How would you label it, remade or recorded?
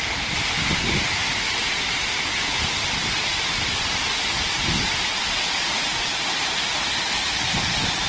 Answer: recorded